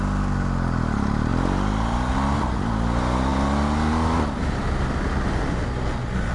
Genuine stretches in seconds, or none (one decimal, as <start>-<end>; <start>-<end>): 0.0-6.3